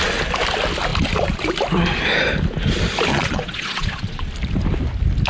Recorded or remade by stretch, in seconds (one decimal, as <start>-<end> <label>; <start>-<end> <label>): 0.0-3.1 recorded; 3.1-4.3 remade; 4.3-5.3 recorded